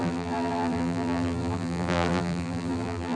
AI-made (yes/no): yes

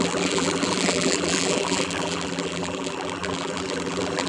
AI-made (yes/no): yes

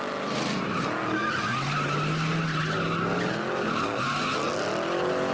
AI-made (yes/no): no